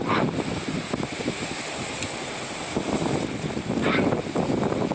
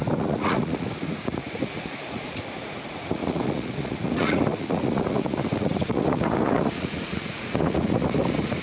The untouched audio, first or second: first